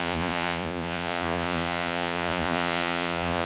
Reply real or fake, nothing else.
fake